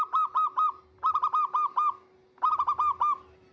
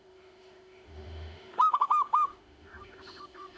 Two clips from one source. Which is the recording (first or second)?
first